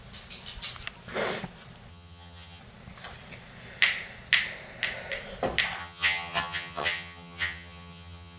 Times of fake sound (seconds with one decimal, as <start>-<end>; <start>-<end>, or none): 1.9-2.6; 5.8-8.4